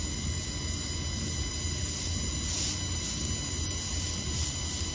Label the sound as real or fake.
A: fake